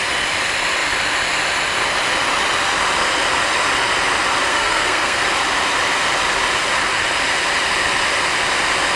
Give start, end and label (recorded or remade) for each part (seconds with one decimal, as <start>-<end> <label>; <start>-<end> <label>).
0.0-4.5 recorded; 4.5-5.2 remade; 5.2-9.0 recorded